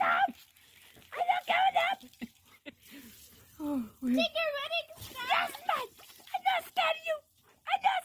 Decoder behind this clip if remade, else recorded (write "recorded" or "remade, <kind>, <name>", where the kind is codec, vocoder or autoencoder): recorded